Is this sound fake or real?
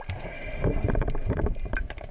real